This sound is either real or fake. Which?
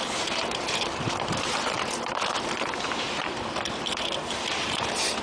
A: fake